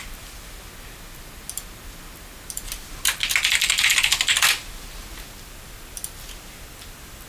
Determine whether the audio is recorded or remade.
recorded